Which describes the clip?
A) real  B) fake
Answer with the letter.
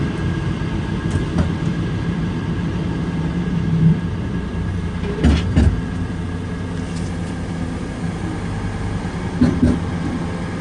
A